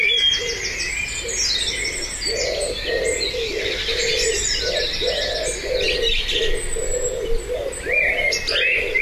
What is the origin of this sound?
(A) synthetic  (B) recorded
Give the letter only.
B